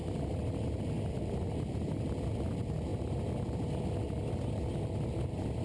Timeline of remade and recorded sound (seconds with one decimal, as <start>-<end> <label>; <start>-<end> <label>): 0.0-5.6 recorded